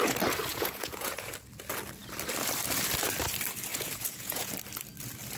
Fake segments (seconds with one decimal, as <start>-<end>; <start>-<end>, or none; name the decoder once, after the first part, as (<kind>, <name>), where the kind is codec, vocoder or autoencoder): 0.5-1.3 (vocoder, Vocos); 3.7-4.5